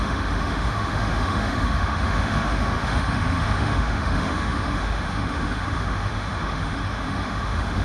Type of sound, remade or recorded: remade